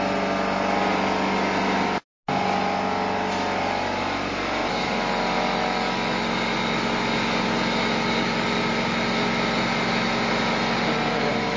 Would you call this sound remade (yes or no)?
no